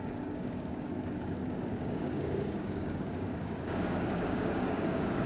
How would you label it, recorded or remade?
remade